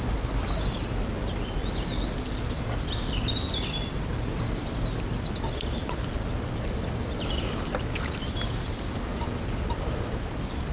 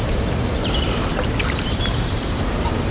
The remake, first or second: second